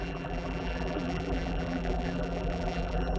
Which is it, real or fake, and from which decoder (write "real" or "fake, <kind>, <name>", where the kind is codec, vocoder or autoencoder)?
fake, vocoder, BigVGAN v2